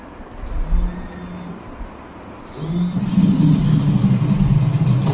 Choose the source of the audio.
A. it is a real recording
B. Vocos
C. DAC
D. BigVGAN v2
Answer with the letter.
A